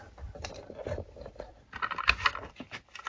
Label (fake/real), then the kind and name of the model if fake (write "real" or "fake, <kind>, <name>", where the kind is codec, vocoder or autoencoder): real